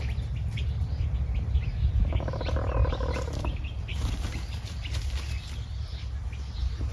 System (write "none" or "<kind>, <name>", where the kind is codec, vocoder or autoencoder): none